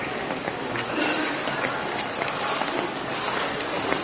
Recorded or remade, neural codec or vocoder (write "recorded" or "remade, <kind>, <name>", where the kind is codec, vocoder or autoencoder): remade, codec, DAC